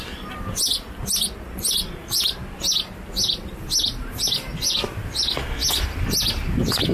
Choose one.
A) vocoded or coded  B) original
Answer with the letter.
B